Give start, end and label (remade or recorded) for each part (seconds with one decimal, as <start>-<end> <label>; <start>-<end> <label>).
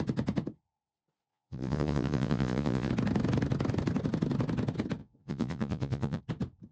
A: 0.0-1.3 recorded; 1.3-2.9 remade; 2.9-5.0 recorded; 5.0-6.2 remade; 6.2-6.7 recorded